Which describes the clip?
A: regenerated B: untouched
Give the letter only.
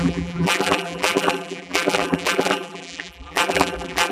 A